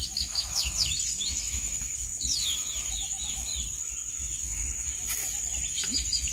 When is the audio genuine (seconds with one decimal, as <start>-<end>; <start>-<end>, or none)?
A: 3.5-4.1; 5.2-5.7